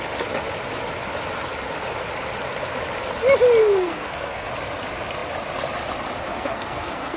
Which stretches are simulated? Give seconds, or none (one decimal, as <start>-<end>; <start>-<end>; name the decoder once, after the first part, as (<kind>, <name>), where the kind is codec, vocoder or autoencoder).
3.6-4.5 (codec, SNAC); 6.3-7.2